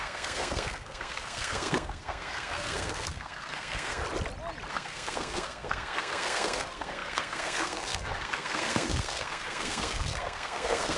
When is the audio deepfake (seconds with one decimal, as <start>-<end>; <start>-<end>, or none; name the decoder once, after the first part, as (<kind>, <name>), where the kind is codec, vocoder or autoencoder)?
0.0-4.0 (codec, SNAC); 4.7-11.0

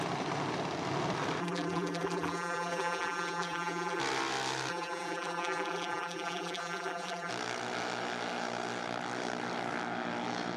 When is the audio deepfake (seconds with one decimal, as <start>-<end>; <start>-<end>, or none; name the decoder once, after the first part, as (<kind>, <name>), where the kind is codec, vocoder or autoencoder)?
1.4-4.0 (vocoder, BigVGAN v2); 4.7-7.3

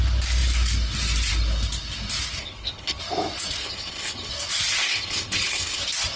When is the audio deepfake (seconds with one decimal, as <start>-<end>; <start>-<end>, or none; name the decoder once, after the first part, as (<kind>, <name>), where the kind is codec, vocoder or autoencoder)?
2.4-3.0 (codec, HILCodec); 3.6-4.3; 4.8-5.8

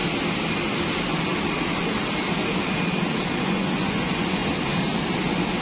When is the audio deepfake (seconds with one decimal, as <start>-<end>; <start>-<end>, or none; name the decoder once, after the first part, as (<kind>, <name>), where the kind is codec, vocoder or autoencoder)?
3.4-4.4 (vocoder, Vocos)

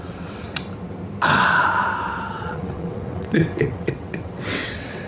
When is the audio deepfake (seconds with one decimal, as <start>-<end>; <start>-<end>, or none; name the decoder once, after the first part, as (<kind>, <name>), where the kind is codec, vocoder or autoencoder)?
0.0-0.6 (vocoder, WaveNeXt); 2.3-5.1

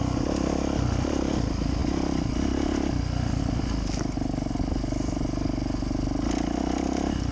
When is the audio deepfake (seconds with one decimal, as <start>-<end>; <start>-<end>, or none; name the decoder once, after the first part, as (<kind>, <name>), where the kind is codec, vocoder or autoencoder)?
none